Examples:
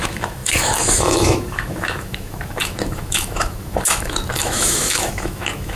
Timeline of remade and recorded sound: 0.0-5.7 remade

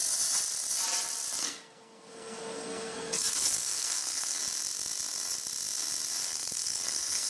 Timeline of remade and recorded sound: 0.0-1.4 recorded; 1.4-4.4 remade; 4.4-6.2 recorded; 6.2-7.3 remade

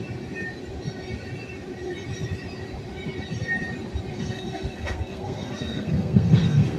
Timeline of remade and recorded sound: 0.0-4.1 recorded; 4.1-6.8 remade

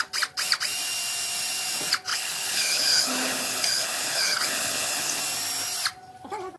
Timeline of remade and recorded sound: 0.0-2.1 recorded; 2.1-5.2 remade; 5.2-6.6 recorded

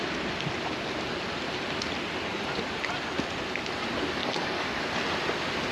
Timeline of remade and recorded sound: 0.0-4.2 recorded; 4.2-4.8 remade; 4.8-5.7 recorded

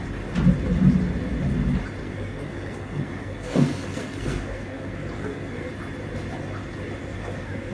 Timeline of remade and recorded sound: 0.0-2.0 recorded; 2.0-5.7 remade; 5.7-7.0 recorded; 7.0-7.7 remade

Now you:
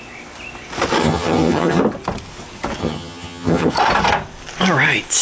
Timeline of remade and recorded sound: 0.0-1.0 recorded; 1.0-1.8 remade; 1.8-2.8 recorded; 2.8-3.7 remade; 3.7-5.2 recorded

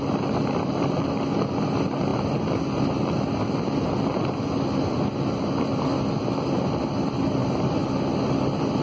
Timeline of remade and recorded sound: 0.0-8.8 recorded